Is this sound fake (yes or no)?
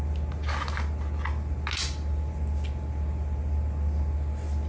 no